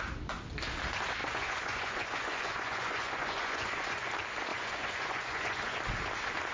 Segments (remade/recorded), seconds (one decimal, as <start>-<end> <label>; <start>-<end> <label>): 0.0-1.2 recorded; 1.2-4.1 remade; 4.1-4.5 recorded; 4.5-5.8 remade; 5.8-6.5 recorded